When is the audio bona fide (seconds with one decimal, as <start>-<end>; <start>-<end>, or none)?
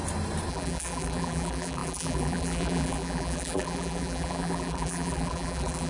0.0-0.5